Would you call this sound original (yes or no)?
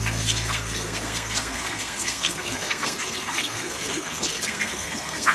no